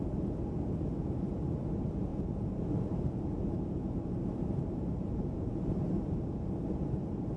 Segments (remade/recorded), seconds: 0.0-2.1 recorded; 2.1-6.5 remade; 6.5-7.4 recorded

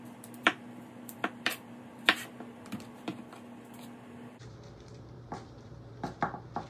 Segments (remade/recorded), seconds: 0.0-3.1 remade; 3.1-3.7 recorded; 3.7-6.7 remade

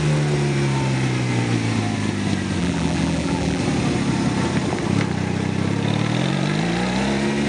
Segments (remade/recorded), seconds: 0.0-2.6 recorded; 2.6-3.6 remade; 3.6-7.5 recorded

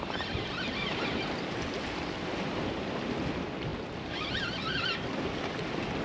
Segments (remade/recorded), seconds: 0.0-2.3 recorded; 2.3-2.9 remade; 2.9-6.0 recorded